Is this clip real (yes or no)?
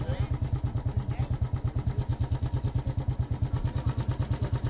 yes